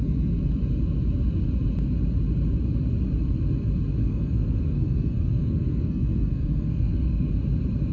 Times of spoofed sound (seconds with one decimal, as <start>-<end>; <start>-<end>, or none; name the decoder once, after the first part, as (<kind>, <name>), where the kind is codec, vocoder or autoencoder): 4.0-7.3 (codec, SNAC)